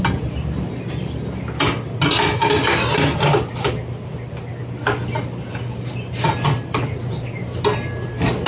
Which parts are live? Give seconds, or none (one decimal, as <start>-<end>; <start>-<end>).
0.0-8.5